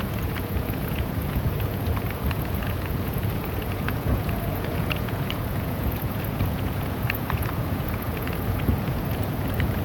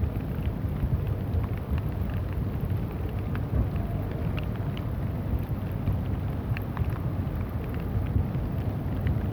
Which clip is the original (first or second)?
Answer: second